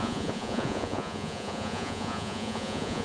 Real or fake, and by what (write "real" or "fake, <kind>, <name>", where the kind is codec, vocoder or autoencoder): fake, vocoder, Vocos